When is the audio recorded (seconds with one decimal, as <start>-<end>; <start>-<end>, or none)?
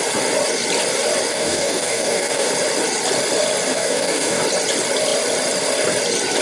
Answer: 0.0-1.3; 2.5-3.7; 4.4-6.4